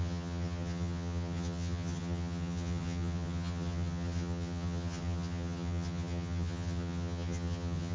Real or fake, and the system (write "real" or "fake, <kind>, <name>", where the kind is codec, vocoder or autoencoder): fake, vocoder, HiFi-GAN